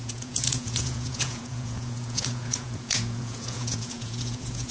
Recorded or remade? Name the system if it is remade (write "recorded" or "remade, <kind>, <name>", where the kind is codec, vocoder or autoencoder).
remade, vocoder, Vocos